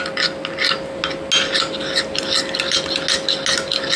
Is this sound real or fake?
real